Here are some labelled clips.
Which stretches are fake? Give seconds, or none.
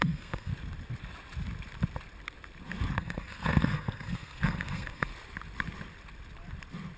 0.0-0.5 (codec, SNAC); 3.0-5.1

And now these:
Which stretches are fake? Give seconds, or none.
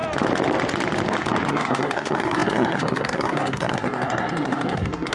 1.5-5.1 (codec, SNAC)